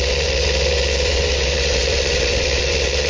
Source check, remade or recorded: remade